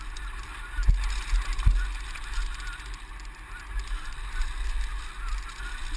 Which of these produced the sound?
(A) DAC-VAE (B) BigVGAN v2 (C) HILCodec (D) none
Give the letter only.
D